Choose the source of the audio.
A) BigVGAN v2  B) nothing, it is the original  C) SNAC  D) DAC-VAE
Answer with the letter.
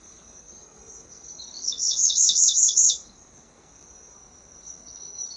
C